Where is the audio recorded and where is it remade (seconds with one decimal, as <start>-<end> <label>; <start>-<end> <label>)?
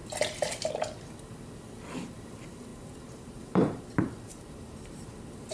0.0-2.7 recorded; 2.7-5.5 remade